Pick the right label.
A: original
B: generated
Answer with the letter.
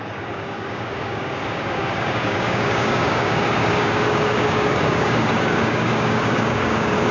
B